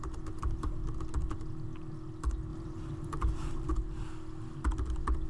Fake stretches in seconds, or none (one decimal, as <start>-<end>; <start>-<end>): 0.4-0.9; 2.5-3.7